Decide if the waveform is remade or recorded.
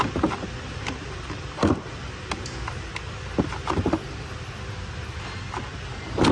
recorded